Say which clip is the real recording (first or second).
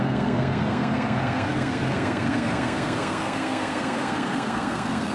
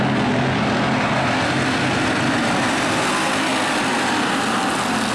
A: second